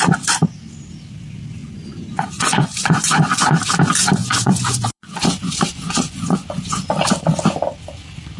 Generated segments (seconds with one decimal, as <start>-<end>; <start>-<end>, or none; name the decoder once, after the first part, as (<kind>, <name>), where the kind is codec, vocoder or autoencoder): 1.6-3.6 (vocoder, Vocos); 4.2-6.9